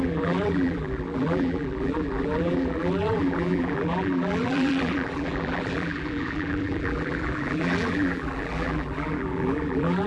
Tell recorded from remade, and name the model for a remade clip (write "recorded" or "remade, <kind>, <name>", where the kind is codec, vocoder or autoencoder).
remade, vocoder, BigVGAN v2